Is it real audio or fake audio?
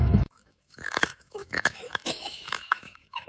fake